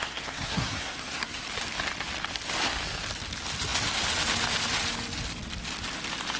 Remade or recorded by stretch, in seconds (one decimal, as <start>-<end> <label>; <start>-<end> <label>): 0.0-1.4 remade; 1.4-6.4 recorded